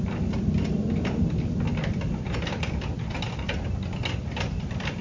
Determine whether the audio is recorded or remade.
recorded